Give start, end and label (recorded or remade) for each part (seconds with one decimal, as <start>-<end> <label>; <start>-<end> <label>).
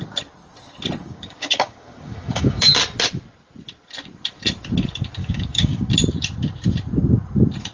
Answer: 0.0-1.0 recorded; 1.0-2.7 remade; 2.7-5.2 recorded; 5.2-5.9 remade; 5.9-7.7 recorded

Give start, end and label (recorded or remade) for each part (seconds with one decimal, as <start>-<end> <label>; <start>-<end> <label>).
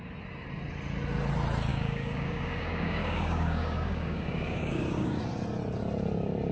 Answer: 0.0-1.7 recorded; 1.7-5.2 remade; 5.2-6.5 recorded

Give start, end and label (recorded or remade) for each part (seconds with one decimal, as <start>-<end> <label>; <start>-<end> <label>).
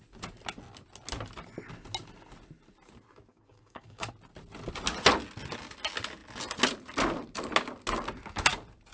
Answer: 0.0-3.3 recorded; 3.3-4.1 remade; 4.1-8.9 recorded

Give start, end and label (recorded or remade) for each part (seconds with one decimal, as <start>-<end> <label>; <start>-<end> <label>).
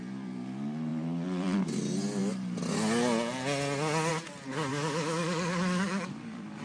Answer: 0.0-4.7 recorded; 4.7-6.6 remade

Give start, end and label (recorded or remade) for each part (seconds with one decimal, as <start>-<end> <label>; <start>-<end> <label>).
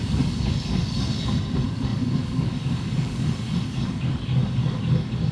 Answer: 0.0-5.3 remade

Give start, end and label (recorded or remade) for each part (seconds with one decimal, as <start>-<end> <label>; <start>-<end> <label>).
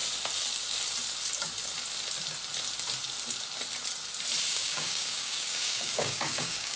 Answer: 0.0-4.5 recorded; 4.5-6.8 remade